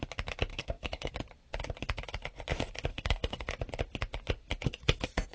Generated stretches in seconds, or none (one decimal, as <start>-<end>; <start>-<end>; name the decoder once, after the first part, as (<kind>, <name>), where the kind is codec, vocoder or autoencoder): 0.5-1.1 (codec, SNAC); 2.9-3.5